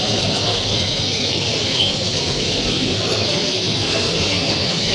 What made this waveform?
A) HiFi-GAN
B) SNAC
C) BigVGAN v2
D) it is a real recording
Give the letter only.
B